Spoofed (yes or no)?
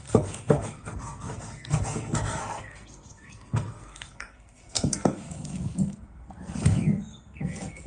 yes